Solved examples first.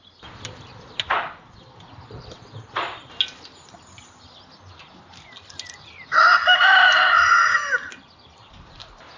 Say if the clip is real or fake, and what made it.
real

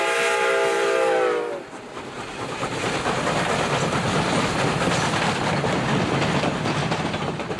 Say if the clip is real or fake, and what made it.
real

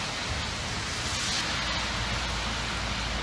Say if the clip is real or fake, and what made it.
real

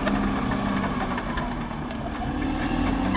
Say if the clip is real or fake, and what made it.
real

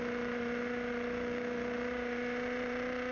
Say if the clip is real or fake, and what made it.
real